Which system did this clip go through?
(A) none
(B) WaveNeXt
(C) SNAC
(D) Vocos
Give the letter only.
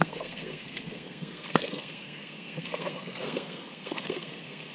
C